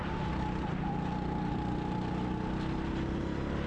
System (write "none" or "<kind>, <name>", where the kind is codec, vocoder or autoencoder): none